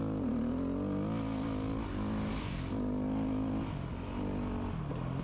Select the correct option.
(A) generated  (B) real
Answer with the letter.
B